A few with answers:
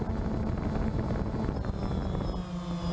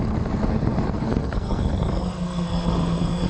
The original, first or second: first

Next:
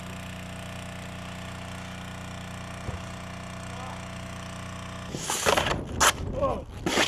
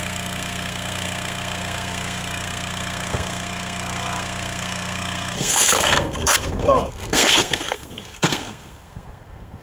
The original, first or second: first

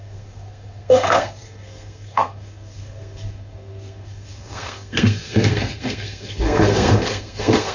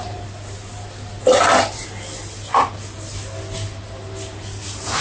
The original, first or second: second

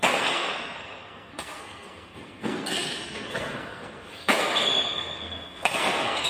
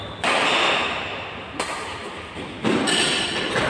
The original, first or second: second